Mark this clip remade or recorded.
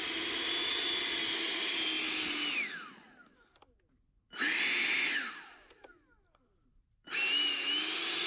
recorded